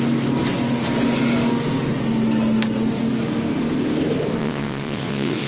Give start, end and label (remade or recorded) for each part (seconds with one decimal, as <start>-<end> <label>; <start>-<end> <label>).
0.0-4.4 recorded; 4.4-5.5 remade